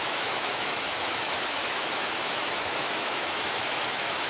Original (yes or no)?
no